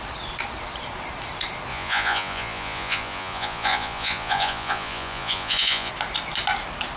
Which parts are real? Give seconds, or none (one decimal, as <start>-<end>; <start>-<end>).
0.0-1.7; 5.9-7.0